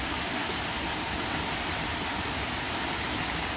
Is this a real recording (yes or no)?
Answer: yes